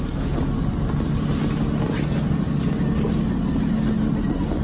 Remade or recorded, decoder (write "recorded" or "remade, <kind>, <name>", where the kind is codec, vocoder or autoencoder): recorded